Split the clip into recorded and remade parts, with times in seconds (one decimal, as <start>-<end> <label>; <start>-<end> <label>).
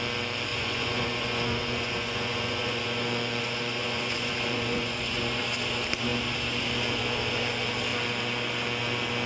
0.0-0.5 recorded; 0.5-5.4 remade; 5.4-9.3 recorded